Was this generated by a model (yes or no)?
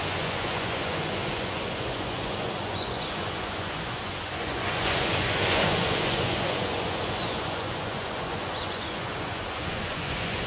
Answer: yes